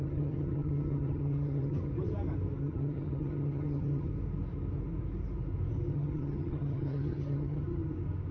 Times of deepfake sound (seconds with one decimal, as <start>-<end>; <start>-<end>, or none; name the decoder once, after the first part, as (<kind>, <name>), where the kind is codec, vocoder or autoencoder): 0.0-1.9 (vocoder, HiFi-GAN); 2.6-4.1; 5.9-7.8